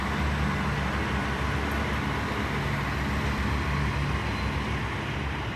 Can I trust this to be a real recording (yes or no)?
yes